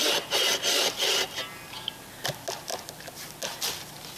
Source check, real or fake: real